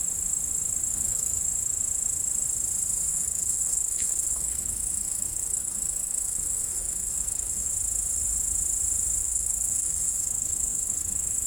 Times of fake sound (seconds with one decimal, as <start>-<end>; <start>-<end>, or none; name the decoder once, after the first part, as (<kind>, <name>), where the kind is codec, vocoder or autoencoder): 0.9-1.4 (codec, SNAC); 3.1-7.7; 9.2-11.5